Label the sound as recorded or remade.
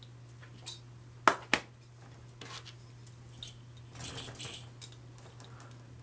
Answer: recorded